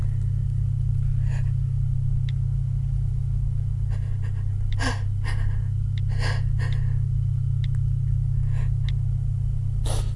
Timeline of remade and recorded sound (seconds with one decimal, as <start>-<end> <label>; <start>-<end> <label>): 0.0-10.2 recorded